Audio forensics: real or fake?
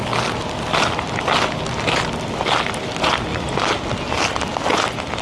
real